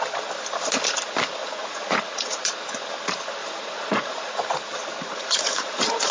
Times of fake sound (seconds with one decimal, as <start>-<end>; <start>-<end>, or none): 1.4-2.4; 3.4-4.5; 5.1-6.1